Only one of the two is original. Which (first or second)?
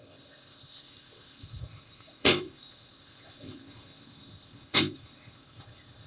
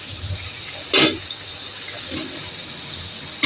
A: second